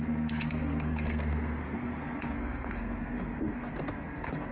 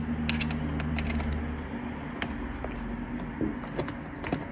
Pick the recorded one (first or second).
second